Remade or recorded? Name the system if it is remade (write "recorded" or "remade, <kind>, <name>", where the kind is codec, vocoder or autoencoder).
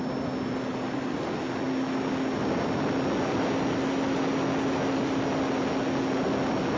recorded